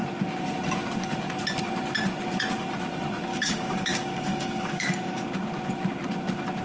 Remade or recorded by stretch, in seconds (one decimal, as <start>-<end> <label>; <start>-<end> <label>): 0.0-3.3 recorded; 3.3-5.3 remade; 5.3-6.6 recorded